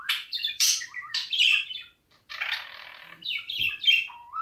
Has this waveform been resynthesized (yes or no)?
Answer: yes